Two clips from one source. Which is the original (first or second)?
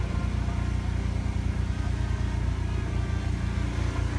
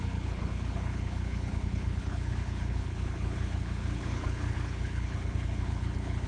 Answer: first